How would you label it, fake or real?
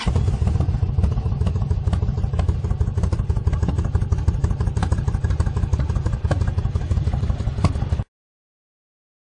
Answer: real